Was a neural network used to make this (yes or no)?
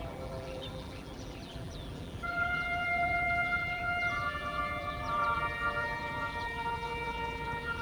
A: yes